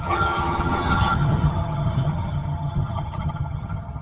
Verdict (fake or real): fake